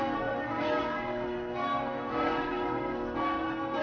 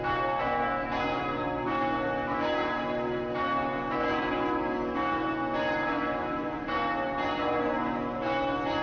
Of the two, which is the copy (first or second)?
first